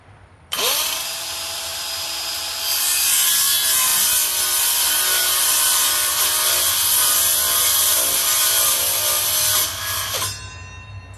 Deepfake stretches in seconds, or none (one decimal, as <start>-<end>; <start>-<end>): 0.0-10.0